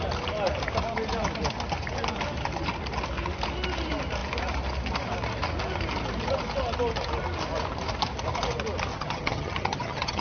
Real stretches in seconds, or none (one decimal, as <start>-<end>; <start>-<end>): 0.0-8.9